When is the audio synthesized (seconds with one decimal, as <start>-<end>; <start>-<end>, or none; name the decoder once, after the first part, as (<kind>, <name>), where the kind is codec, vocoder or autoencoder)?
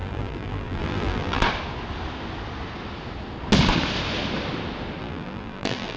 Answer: 0.0-1.4 (vocoder, BigVGAN v2); 5.0-6.0